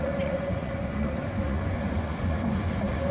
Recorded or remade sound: remade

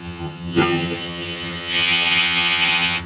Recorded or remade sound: remade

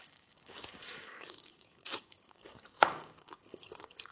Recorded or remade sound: remade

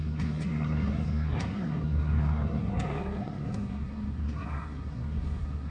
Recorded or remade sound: remade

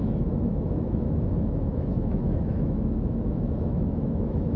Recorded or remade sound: remade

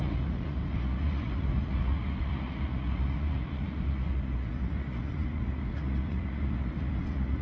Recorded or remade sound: remade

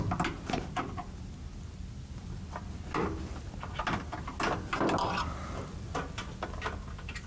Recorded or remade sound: recorded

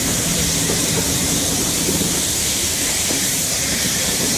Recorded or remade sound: remade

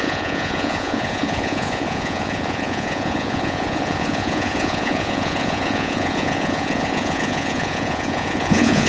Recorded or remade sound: remade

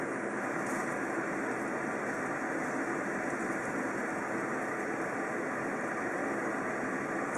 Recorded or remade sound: recorded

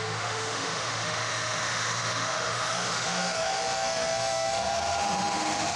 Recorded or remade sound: remade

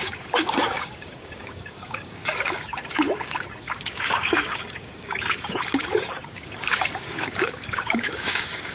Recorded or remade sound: remade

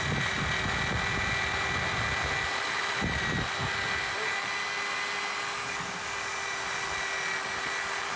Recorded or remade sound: recorded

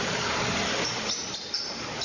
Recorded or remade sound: recorded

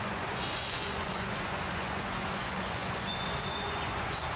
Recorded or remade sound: remade